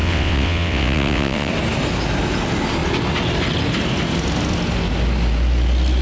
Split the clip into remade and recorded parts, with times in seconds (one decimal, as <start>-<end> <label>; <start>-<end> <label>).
0.0-1.5 remade; 1.5-6.0 recorded